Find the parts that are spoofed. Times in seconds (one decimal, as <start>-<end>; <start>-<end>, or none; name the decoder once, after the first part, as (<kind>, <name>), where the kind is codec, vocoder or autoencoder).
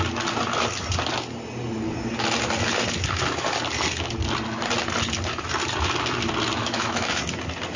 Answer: 6.6-7.2 (autoencoder, DAC-VAE)